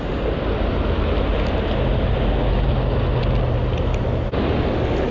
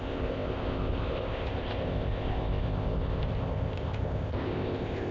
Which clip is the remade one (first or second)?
second